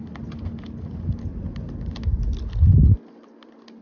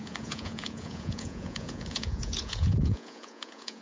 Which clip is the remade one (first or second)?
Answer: second